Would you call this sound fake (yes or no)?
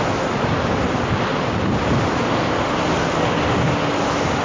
no